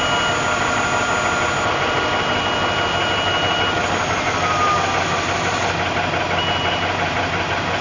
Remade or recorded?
recorded